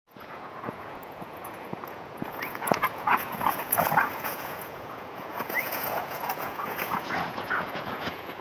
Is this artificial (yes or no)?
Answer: yes